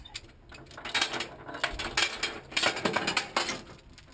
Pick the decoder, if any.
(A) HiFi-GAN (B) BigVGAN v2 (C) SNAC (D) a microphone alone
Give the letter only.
D